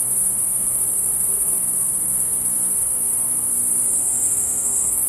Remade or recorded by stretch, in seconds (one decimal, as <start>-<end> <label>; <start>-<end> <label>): 0.0-5.1 remade